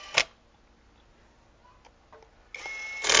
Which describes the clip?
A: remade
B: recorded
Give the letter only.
B